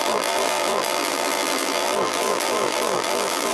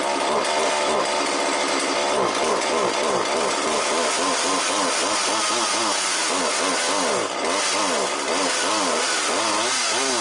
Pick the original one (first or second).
second